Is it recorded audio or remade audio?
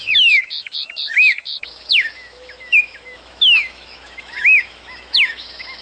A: remade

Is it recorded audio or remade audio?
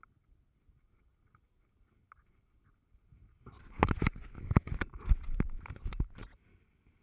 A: recorded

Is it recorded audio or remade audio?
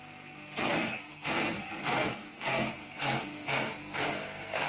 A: remade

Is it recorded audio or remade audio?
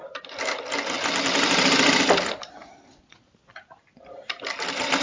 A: recorded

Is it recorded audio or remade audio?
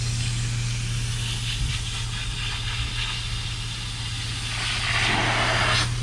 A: recorded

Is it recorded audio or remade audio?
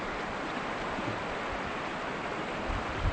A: recorded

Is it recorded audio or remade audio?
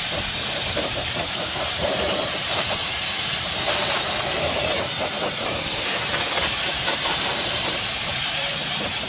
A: remade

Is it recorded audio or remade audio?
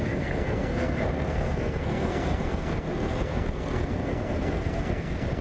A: remade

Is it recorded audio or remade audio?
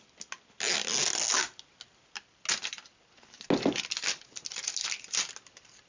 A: recorded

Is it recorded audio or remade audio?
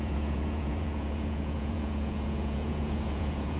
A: remade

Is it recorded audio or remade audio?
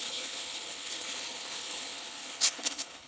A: remade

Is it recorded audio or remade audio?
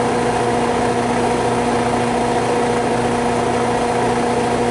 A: recorded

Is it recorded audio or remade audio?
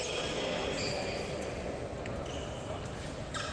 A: recorded